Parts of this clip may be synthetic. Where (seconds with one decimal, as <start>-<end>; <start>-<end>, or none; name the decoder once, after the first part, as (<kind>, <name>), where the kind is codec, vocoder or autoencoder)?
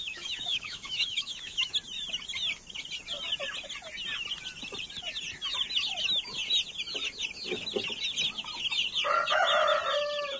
0.0-1.7 (autoencoder, DAC-VAE)